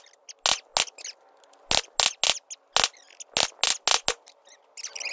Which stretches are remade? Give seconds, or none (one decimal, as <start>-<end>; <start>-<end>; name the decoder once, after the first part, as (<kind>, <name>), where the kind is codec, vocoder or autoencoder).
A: none

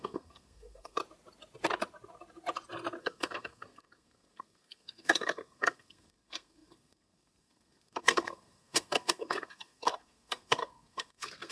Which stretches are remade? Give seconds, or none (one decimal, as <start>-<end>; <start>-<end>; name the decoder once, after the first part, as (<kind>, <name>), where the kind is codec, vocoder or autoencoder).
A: 0.0-1.0 (codec, SNAC); 3.0-11.5